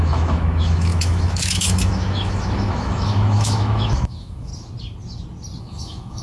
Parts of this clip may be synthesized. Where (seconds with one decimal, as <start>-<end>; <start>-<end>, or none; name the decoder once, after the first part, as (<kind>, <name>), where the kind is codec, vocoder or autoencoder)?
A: 0.0-4.5 (autoencoder, DAC-VAE); 5.6-6.2

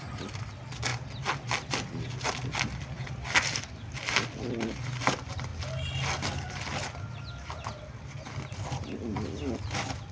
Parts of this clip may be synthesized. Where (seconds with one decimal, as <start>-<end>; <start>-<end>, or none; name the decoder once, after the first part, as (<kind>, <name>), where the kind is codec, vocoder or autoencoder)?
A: none

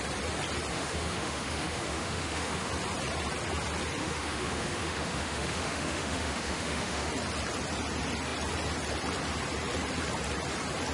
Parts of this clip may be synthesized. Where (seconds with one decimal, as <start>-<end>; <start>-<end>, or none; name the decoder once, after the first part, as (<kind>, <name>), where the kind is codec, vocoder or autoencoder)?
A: 0.7-2.7 (autoencoder, DAC-VAE); 4.0-7.1

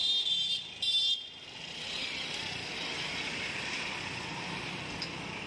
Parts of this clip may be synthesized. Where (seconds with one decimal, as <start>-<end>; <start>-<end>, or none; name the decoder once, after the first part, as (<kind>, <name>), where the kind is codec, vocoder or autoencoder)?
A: none

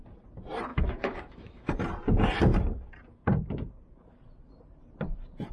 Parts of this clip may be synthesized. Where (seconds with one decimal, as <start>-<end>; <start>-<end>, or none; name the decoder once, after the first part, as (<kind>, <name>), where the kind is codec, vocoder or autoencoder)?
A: 0.7-1.7 (autoencoder, DAC-VAE)

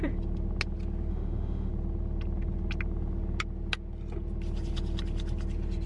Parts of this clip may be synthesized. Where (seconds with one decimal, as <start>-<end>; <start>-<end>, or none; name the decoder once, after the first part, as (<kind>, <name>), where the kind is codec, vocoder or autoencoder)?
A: 1.1-1.7 (autoencoder, DAC-VAE)